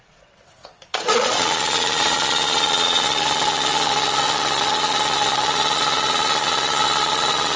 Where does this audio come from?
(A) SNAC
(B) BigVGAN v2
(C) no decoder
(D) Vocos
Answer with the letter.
D